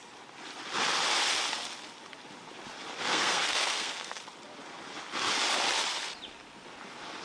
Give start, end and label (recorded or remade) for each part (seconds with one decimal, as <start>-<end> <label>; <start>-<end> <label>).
0.0-3.1 recorded; 3.1-4.2 remade; 4.2-7.2 recorded